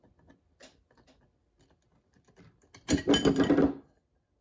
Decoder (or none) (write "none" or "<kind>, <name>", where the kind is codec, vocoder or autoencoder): none